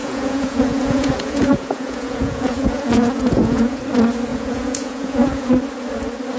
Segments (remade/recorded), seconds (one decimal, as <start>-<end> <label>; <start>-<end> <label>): 0.0-3.8 remade; 3.8-4.3 recorded; 4.3-5.5 remade; 5.5-6.4 recorded